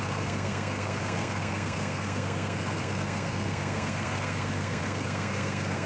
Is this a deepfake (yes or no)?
yes